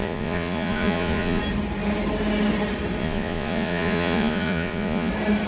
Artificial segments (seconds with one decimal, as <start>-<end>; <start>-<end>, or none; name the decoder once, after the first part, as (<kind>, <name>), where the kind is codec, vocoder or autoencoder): 0.0-1.4 (vocoder, Vocos); 3.0-5.1

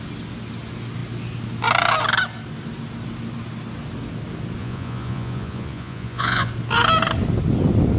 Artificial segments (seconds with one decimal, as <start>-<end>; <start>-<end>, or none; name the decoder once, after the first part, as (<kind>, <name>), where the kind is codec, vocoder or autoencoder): 4.6-6.5 (vocoder, Vocos)

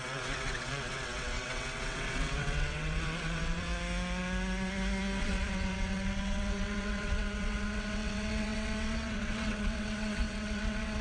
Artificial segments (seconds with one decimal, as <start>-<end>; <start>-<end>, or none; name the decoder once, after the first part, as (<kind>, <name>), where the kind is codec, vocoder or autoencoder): 0.0-3.7 (vocoder, WaveNeXt); 5.2-11.0

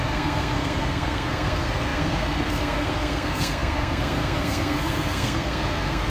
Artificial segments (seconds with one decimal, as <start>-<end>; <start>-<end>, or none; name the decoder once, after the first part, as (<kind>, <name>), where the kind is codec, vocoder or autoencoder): 0.0-6.1 (codec, SNAC)

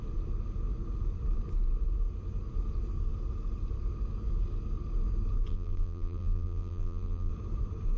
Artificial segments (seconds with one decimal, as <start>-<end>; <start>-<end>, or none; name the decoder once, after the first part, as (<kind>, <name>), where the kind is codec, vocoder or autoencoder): 5.5-7.3 (vocoder, BigVGAN v2)

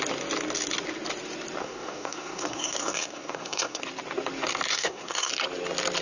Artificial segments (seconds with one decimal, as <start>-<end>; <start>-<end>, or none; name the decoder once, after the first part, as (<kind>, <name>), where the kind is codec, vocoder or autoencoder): 1.6-3.8 (codec, SNAC); 4.7-5.3

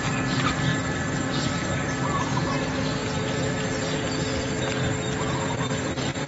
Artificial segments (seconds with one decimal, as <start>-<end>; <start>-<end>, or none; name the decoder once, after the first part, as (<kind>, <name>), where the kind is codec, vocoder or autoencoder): none